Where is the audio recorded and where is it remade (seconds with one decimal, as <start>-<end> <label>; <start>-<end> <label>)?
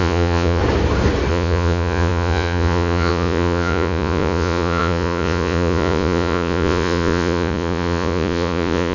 0.0-0.6 remade; 0.6-1.3 recorded; 1.3-8.9 remade